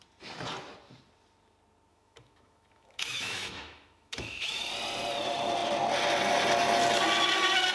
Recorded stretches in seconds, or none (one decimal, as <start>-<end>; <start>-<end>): 0.0-1.9; 4.7-7.7